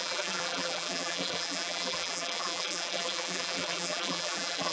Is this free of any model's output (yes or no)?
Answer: no